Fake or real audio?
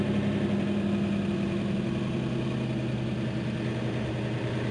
real